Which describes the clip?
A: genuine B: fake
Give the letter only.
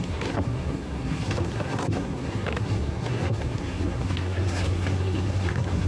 B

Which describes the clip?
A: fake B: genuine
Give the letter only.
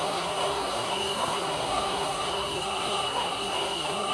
A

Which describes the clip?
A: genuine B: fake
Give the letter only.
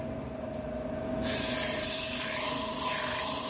A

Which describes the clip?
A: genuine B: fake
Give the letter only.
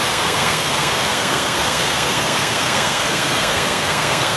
B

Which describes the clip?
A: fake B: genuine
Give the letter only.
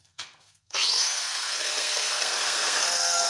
A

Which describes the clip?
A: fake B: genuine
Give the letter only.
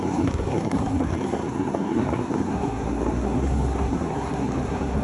A